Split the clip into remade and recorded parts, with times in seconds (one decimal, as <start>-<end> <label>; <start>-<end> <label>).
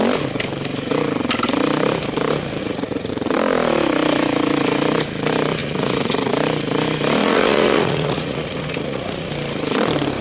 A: 0.0-2.6 recorded; 2.6-3.1 remade; 3.1-5.6 recorded; 5.6-6.3 remade; 6.3-7.2 recorded; 7.2-9.3 remade; 9.3-10.2 recorded